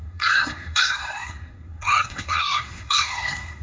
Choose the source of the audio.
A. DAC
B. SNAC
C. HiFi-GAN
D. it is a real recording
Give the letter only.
B